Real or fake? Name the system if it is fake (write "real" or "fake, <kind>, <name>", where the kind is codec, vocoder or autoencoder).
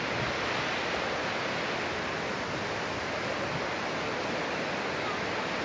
real